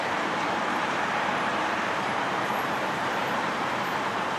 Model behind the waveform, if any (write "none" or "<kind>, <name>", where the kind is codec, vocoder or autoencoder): vocoder, BigVGAN v2